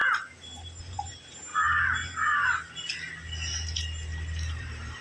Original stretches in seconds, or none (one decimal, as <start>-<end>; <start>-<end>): 0.0-0.8; 1.5-4.5